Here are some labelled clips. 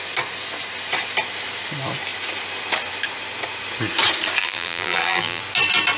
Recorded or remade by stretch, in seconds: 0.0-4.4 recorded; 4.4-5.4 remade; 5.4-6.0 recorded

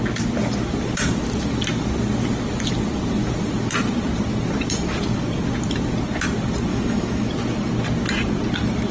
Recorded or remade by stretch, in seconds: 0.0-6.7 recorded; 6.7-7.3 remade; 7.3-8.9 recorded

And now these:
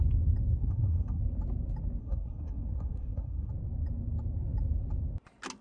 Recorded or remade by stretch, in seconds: 0.0-0.6 recorded; 0.6-1.2 remade; 1.2-2.0 recorded; 2.0-3.5 remade; 3.5-5.6 recorded

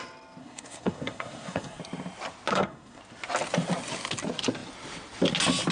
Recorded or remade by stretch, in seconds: 0.0-0.4 recorded; 0.4-1.8 remade; 1.8-2.5 recorded; 2.5-3.0 remade; 3.0-5.7 recorded